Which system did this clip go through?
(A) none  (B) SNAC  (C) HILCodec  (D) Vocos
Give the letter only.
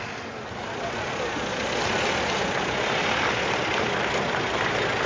A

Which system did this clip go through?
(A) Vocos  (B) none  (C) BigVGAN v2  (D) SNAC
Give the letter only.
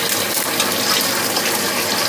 B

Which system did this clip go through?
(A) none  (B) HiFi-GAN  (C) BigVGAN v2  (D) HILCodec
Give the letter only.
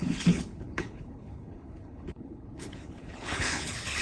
D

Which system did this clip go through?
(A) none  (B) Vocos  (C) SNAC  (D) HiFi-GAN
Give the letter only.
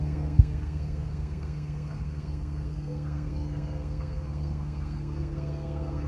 C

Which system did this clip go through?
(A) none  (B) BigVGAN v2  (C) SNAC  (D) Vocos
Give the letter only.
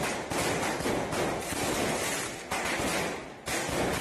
A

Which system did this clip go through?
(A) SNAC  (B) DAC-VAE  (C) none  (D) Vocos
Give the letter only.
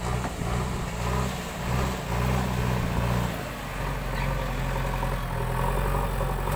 C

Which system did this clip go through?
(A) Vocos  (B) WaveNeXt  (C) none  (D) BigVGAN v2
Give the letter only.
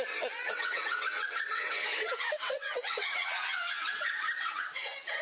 B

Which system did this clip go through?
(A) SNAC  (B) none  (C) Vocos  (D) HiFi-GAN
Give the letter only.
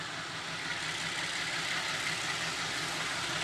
B